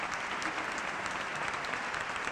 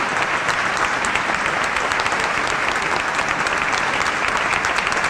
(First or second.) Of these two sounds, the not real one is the first